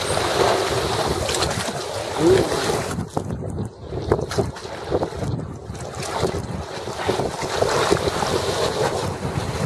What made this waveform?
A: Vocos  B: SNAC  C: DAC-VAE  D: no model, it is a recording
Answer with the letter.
D